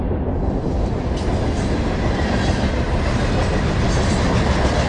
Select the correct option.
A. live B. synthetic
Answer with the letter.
A